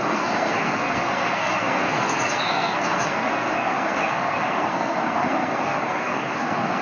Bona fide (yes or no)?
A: no